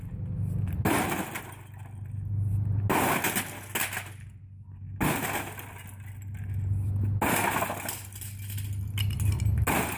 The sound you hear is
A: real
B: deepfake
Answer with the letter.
A